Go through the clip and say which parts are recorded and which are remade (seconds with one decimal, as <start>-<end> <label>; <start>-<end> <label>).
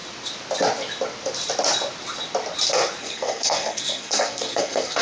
0.0-3.0 recorded; 3.0-5.0 remade